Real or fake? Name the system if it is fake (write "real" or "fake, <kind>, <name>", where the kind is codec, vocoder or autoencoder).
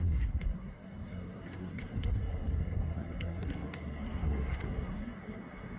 fake, codec, SNAC